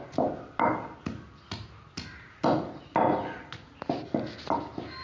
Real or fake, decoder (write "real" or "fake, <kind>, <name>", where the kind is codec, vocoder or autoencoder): real